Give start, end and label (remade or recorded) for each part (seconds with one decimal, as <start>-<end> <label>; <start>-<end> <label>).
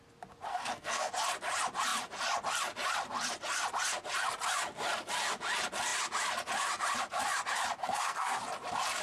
0.0-0.5 recorded; 0.5-1.1 remade; 1.1-7.8 recorded; 7.8-8.4 remade; 8.4-9.0 recorded